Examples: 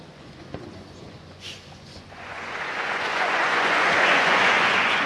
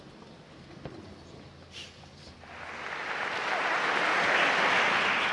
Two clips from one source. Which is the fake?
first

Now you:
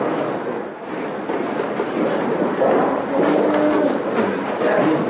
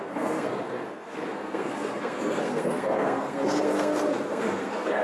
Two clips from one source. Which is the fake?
second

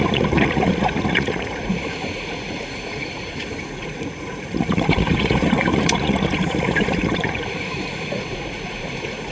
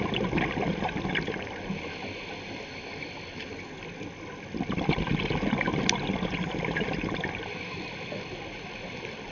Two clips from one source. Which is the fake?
first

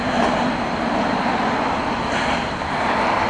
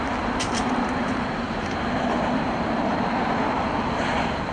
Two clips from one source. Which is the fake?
second